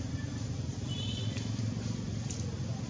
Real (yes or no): yes